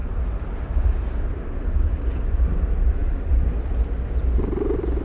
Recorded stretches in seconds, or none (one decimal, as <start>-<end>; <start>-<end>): 0.0-5.0